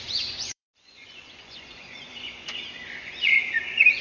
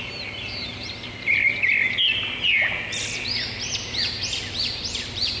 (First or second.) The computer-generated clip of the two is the first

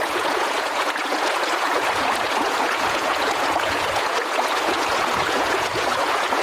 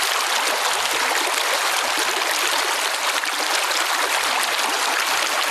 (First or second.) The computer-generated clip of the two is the first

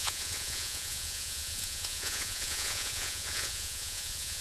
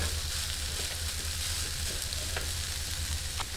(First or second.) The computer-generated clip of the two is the first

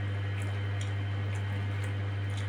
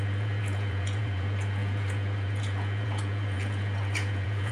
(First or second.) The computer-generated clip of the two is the second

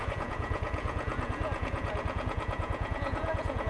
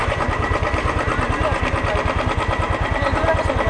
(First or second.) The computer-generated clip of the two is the first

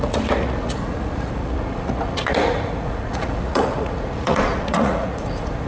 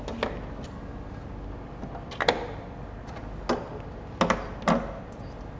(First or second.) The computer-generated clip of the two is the first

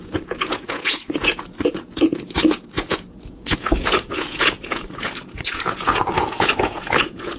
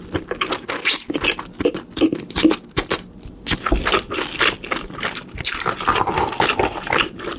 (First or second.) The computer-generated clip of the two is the first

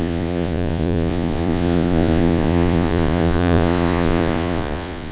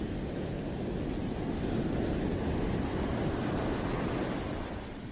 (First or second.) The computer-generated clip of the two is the first